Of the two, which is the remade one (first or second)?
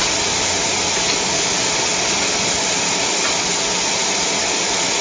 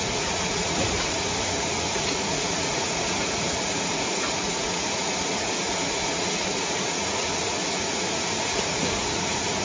second